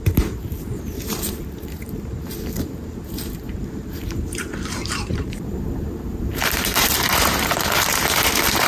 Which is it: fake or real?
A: fake